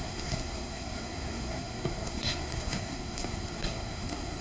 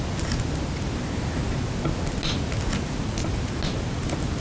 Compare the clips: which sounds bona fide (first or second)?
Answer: second